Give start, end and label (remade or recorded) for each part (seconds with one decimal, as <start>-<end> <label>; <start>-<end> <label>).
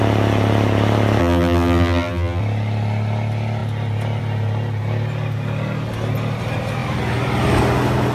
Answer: 0.0-1.2 recorded; 1.2-2.4 remade; 2.4-8.1 recorded